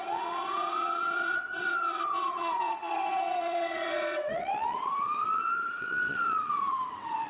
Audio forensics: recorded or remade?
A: remade